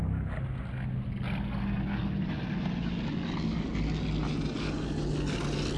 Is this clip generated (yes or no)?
no